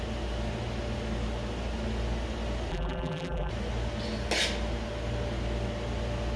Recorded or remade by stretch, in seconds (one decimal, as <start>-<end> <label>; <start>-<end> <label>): 0.0-2.7 recorded; 2.7-3.5 remade; 3.5-6.4 recorded